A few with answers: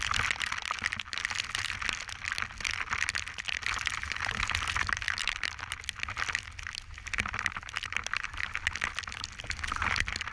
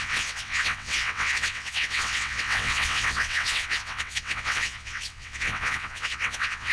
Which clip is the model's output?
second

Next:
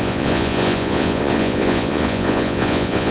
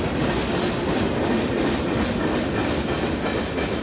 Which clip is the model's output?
first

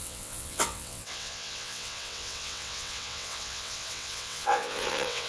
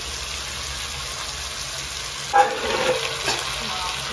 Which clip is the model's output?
first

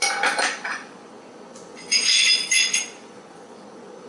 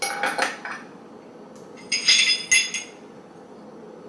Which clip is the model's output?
first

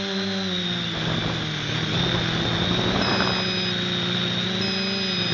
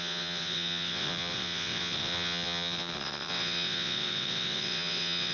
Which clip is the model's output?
second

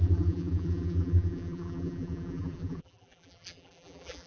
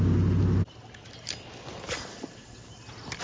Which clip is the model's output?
first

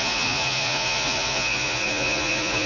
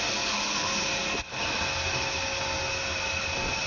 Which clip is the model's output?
first